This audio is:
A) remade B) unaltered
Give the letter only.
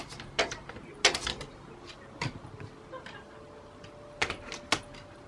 B